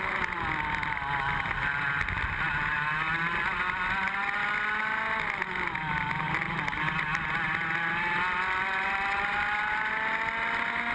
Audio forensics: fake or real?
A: real